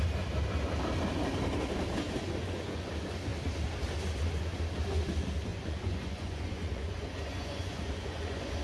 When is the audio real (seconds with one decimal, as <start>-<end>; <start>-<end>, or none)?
0.0-2.4; 2.9-5.5